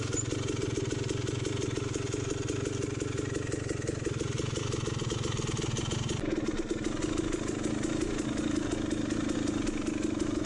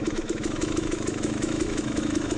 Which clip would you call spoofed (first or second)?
second